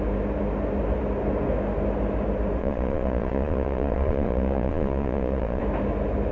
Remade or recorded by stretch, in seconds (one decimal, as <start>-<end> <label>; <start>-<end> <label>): 0.0-2.6 recorded; 2.6-5.6 remade; 5.6-6.3 recorded